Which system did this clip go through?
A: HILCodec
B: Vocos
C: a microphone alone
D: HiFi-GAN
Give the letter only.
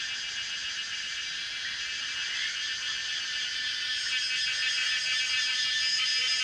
C